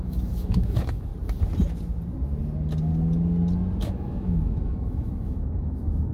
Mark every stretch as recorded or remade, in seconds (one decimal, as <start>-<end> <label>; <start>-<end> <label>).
0.0-1.1 remade; 1.1-3.8 recorded; 3.8-6.1 remade